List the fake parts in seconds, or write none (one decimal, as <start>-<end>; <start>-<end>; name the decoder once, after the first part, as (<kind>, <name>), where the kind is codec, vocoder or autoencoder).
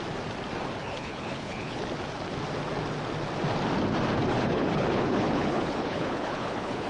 0.8-1.8 (codec, HILCodec); 4.3-6.9